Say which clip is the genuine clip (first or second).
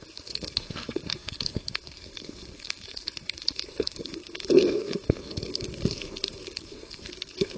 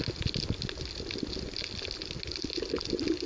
second